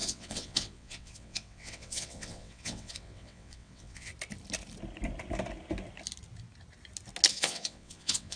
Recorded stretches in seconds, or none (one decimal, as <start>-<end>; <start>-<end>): 4.1-7.3